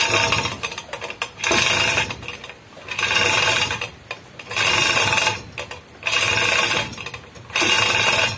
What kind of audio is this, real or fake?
real